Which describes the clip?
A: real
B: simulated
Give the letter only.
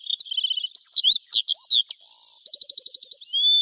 A